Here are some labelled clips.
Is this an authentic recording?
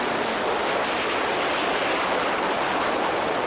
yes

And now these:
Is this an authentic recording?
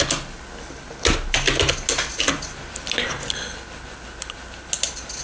yes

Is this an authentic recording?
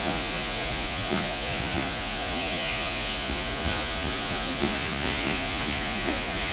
no